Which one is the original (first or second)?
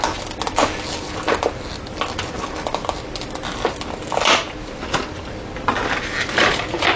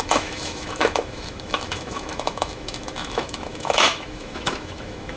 first